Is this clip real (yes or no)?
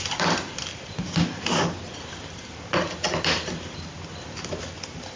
yes